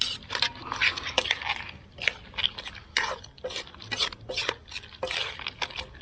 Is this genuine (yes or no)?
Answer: yes